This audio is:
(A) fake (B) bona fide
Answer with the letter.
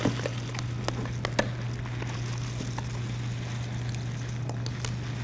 B